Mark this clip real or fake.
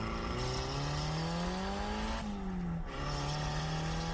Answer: real